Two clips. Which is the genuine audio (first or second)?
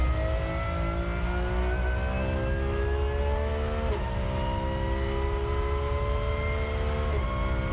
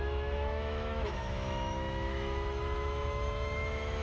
first